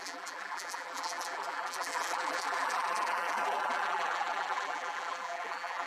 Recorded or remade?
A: remade